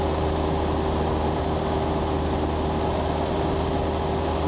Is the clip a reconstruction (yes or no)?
no